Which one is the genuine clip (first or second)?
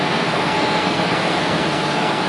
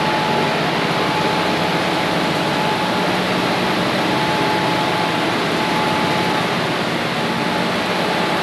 second